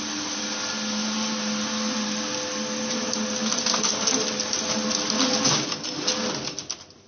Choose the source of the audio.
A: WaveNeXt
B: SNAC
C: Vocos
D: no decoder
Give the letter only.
D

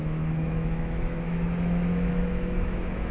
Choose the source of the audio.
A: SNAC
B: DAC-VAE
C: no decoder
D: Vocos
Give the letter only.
B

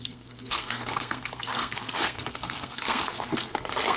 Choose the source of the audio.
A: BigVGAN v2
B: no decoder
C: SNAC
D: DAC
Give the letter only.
C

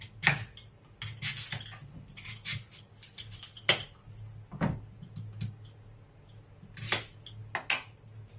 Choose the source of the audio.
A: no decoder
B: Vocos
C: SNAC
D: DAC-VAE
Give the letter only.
A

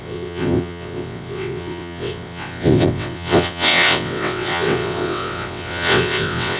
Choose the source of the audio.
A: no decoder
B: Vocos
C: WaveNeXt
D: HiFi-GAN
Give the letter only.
C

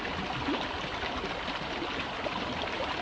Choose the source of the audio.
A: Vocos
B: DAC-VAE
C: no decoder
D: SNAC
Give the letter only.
C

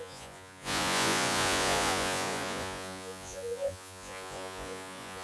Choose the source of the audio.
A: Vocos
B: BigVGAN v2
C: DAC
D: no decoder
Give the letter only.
A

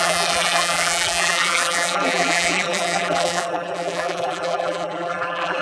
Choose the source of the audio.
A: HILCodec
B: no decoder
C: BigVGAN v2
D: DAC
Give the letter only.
C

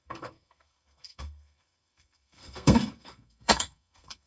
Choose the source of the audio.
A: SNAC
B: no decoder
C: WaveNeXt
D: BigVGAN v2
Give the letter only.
A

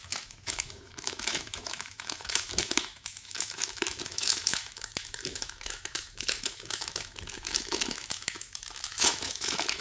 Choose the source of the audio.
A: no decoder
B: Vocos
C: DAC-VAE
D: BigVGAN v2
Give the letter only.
C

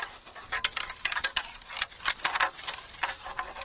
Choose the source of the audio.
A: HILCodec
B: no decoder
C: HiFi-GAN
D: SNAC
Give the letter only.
B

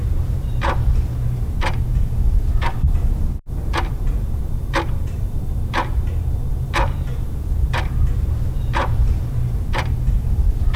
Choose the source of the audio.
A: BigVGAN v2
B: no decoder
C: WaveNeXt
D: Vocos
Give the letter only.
A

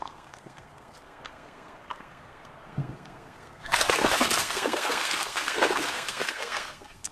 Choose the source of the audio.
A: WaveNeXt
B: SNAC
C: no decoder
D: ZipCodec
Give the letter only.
B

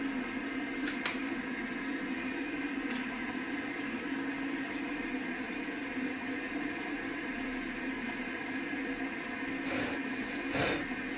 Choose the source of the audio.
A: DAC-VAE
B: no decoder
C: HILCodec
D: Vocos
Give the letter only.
B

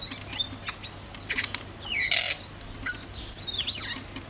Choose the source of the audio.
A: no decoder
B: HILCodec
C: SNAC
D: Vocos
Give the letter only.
A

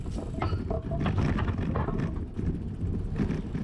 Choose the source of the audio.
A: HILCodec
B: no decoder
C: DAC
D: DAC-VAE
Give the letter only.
B